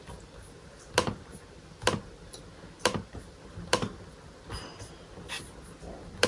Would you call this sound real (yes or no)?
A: yes